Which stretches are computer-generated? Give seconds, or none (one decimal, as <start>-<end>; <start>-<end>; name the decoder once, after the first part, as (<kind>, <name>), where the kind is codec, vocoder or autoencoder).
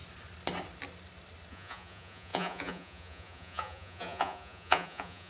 1.5-5.3 (vocoder, Vocos)